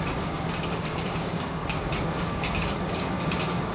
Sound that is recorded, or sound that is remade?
remade